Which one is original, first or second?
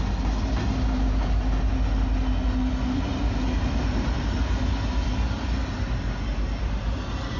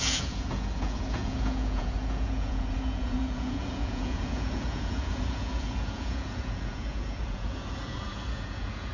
first